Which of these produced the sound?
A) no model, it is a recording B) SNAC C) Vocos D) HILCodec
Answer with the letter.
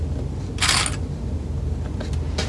A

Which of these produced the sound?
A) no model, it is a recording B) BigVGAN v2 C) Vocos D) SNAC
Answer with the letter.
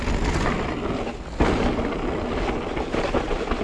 A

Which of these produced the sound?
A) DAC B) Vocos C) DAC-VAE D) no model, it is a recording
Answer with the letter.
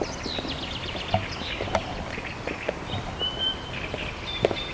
D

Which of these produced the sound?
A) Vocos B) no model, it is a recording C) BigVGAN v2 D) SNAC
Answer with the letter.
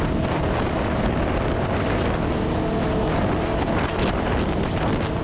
B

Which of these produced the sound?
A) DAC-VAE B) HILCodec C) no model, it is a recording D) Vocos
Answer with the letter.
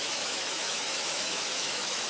A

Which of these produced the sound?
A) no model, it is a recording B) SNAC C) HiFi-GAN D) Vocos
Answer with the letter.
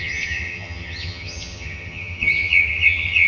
C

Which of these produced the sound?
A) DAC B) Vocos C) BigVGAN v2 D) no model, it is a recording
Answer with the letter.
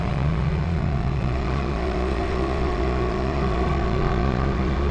B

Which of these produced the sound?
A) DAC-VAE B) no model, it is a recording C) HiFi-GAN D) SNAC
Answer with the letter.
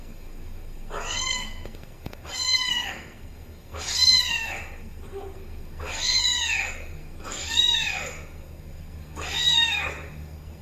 D